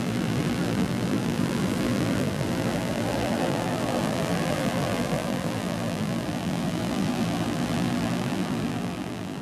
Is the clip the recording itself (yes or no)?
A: no